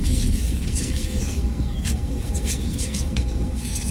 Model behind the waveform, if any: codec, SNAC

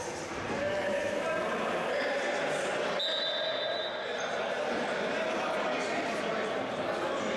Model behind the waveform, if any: none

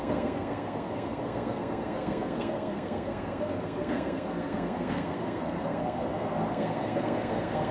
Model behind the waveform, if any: codec, SNAC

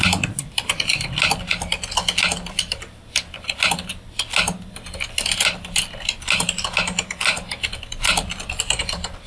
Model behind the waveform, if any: none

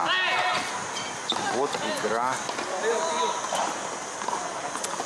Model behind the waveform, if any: none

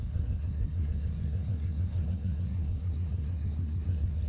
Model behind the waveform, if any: codec, SNAC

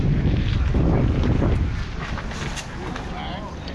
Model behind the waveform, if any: none